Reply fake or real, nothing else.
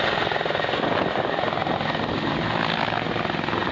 real